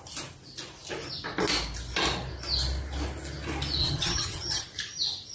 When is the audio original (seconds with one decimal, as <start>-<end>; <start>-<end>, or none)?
0.0-3.8; 4.6-5.3